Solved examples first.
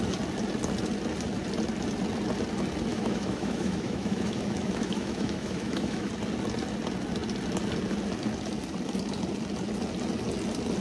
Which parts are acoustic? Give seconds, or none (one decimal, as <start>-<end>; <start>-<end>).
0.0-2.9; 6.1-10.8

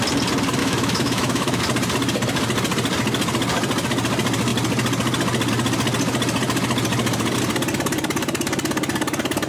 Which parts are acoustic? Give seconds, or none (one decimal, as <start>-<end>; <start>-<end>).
0.0-0.6; 1.6-9.5

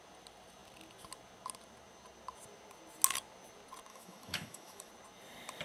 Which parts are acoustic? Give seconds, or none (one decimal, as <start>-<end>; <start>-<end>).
0.0-3.9; 4.9-5.6

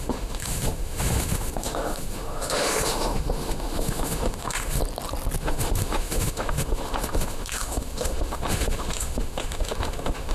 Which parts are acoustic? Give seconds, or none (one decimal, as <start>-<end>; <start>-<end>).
4.8-5.4